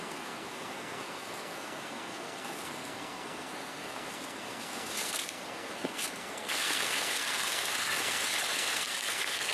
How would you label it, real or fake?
fake